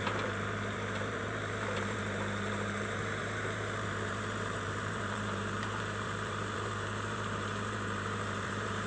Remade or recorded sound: remade